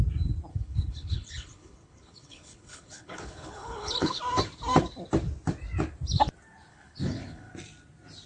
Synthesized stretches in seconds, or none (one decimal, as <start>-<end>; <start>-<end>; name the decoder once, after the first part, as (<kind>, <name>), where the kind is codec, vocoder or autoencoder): 0.5-4.2 (codec, HILCodec); 6.7-7.5